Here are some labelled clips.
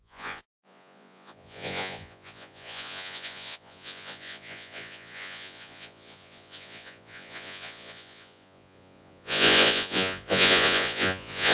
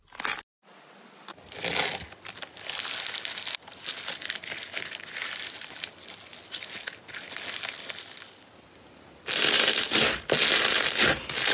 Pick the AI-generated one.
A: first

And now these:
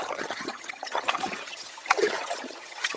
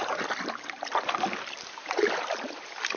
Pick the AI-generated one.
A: first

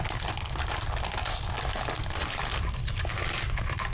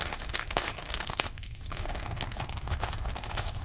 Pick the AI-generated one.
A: second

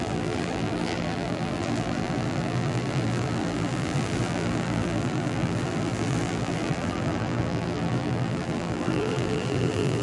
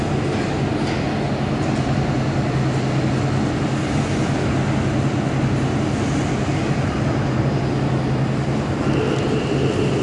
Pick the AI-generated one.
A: first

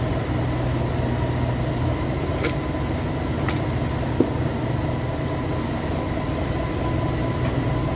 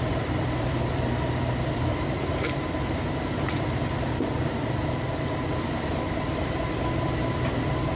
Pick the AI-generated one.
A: second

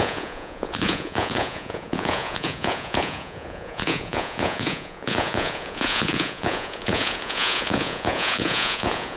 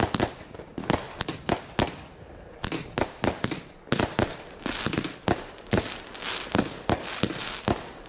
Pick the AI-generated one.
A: first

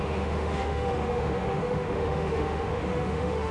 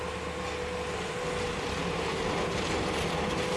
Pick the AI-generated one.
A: first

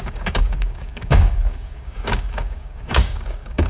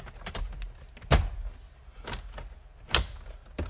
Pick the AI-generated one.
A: first